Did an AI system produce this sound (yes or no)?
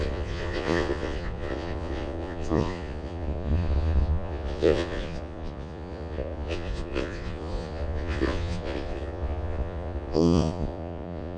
yes